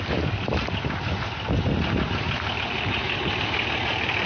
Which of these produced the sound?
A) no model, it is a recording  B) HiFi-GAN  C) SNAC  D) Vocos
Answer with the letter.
A